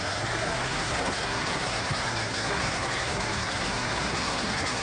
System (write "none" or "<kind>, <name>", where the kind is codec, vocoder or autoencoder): codec, SNAC